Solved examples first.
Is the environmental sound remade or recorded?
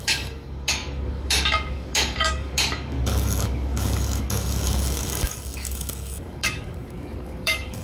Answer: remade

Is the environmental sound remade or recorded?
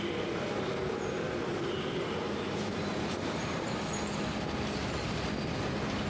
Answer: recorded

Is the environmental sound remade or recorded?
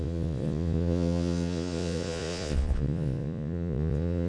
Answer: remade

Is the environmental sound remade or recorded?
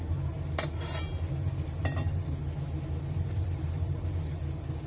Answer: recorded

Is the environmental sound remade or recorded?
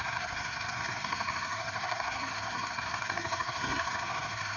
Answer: remade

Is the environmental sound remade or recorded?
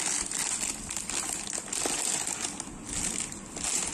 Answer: recorded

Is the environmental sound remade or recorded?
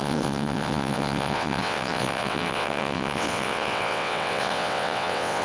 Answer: remade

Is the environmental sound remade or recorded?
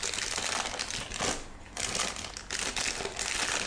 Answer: recorded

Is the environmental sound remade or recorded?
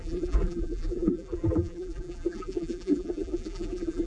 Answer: remade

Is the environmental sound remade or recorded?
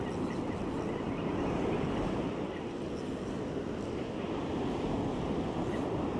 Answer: recorded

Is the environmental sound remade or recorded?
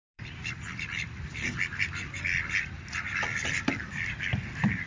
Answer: remade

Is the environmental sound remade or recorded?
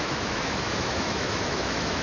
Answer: remade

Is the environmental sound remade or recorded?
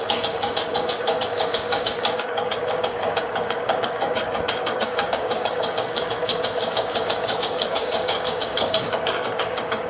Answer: remade